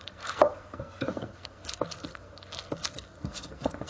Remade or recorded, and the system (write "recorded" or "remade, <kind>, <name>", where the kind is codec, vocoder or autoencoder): remade, codec, SNAC